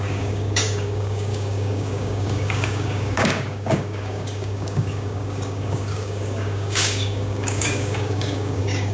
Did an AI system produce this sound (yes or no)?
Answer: yes